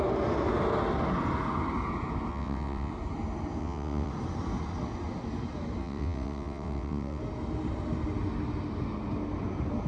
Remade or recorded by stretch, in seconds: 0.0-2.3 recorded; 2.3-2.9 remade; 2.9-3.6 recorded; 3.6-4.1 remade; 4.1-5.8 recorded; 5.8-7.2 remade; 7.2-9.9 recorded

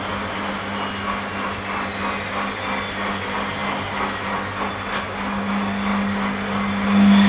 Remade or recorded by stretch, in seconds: 0.0-7.3 recorded

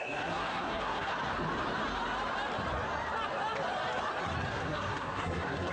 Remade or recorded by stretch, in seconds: 0.0-1.1 remade; 1.1-4.5 recorded; 4.5-5.7 remade

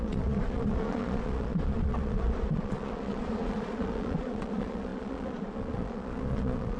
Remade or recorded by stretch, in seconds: 0.0-6.8 remade

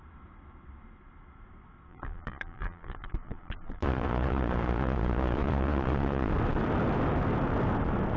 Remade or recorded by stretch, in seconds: 0.0-1.9 recorded; 1.9-6.3 remade; 6.3-8.2 recorded

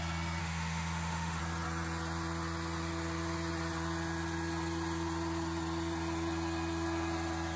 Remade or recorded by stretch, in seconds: 0.0-0.4 recorded; 0.4-1.4 remade; 1.4-7.6 recorded

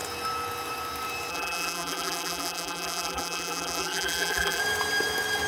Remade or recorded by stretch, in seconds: 0.0-1.3 recorded; 1.3-4.6 remade; 4.6-5.5 recorded